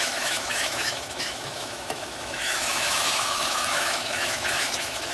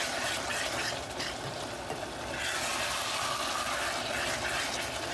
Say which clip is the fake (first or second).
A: first